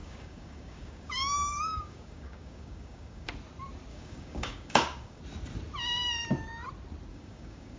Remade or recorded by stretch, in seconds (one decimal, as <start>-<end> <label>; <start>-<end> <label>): 0.0-3.3 remade; 3.3-3.9 recorded; 3.9-5.2 remade; 5.2-7.1 recorded; 7.1-7.8 remade